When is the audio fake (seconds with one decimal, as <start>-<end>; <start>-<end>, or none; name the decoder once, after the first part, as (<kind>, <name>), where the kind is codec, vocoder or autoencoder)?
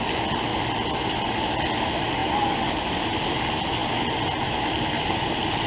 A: 0.5-1.2 (vocoder, BigVGAN v2)